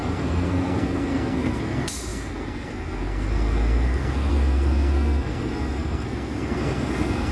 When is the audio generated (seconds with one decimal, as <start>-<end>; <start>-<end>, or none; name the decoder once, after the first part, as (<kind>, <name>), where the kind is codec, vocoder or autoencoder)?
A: 0.0-7.3 (codec, SNAC)